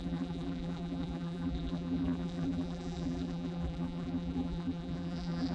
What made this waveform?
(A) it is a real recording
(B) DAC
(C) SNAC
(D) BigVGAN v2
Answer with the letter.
D